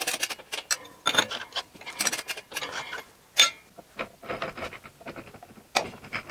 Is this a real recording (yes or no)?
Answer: yes